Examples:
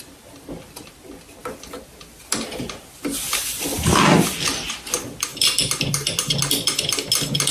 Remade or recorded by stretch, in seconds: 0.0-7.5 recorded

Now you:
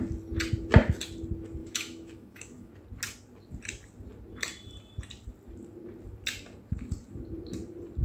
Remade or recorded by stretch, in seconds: 0.0-1.6 recorded; 1.6-2.7 remade; 2.7-8.0 recorded

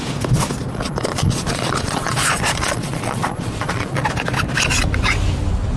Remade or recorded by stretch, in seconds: 0.0-0.7 recorded; 0.7-4.0 remade; 4.0-5.8 recorded

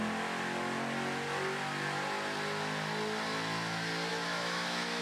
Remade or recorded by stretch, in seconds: 0.0-4.1 recorded; 4.1-5.0 remade

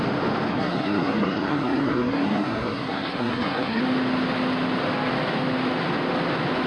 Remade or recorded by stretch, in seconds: 0.0-0.5 recorded; 0.5-3.8 remade; 3.8-6.7 recorded

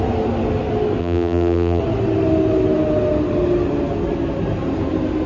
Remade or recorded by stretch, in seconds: 0.0-1.0 recorded; 1.0-1.8 remade; 1.8-5.3 recorded

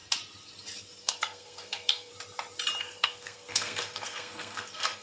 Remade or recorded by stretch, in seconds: 0.0-1.0 recorded; 1.0-2.1 remade; 2.1-2.8 recorded; 2.8-5.0 remade

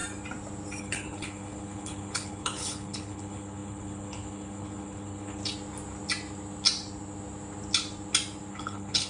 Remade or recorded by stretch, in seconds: 0.0-0.8 recorded; 0.8-5.4 remade; 5.4-8.5 recorded; 8.5-9.1 remade